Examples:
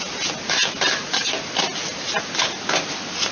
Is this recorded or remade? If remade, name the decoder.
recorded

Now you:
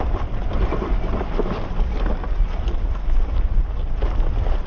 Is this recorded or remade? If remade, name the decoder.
recorded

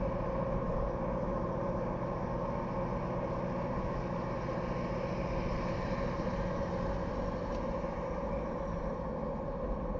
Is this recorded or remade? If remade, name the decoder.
recorded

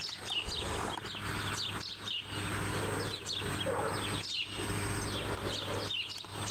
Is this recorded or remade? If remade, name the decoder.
recorded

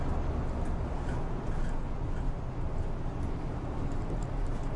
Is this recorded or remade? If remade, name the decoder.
recorded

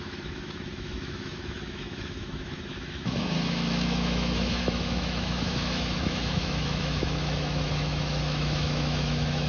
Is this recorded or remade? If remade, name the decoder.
remade, autoencoder, DAC-VAE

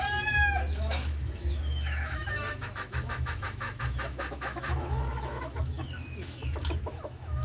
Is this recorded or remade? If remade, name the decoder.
remade, autoencoder, DAC-VAE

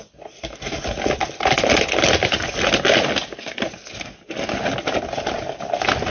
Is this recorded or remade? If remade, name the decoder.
recorded